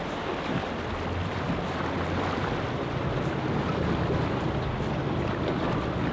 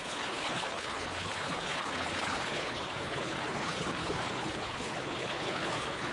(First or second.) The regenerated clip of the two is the second